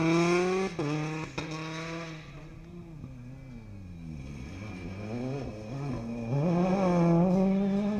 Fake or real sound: real